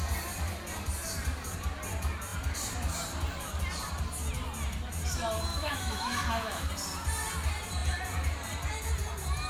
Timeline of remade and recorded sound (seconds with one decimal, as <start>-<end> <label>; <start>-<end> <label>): 0.0-5.5 recorded; 5.5-6.7 remade; 6.7-9.5 recorded